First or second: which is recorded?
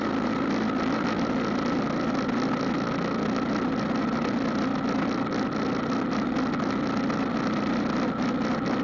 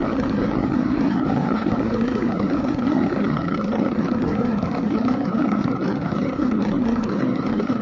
first